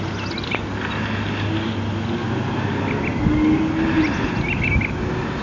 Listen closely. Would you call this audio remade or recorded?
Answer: recorded